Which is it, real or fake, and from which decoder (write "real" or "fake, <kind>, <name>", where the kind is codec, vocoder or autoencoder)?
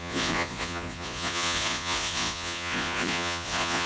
fake, vocoder, Vocos